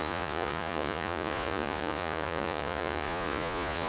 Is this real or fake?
fake